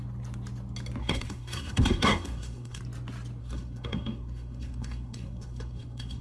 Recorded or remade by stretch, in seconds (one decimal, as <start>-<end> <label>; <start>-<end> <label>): 0.0-1.0 recorded; 1.0-2.8 remade; 2.8-3.4 recorded; 3.4-6.2 remade

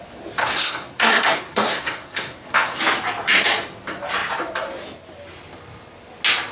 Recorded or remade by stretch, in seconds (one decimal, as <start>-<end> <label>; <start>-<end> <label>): 0.0-0.4 recorded; 0.4-2.8 remade; 2.8-6.5 recorded

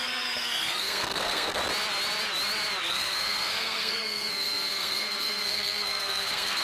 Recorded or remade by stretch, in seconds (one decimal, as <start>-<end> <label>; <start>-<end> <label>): 0.0-1.6 remade; 1.6-2.9 recorded; 2.9-6.6 remade

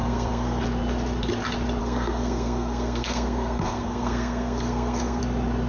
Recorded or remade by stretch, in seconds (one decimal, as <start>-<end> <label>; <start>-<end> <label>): 0.0-0.6 remade; 0.6-1.8 recorded; 1.8-5.2 remade; 5.2-5.7 recorded

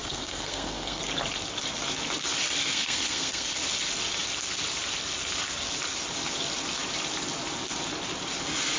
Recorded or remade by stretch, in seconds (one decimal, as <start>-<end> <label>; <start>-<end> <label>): 0.0-1.0 remade; 1.0-2.6 recorded; 2.6-3.5 remade; 3.5-8.8 recorded

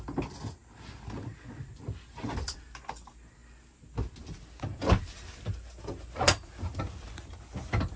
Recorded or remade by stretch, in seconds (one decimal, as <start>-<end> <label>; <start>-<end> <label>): 0.0-8.0 recorded

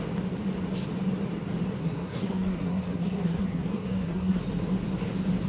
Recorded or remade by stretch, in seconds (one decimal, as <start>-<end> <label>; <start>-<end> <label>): 0.0-1.8 recorded; 1.8-4.4 remade; 4.4-5.5 recorded